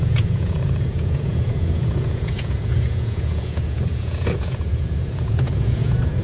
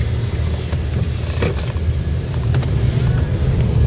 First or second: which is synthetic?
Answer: first